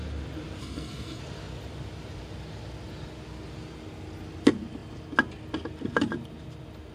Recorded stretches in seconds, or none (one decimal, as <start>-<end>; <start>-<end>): 0.0-0.6; 1.2-6.9